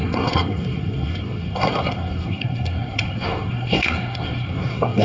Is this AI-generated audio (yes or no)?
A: yes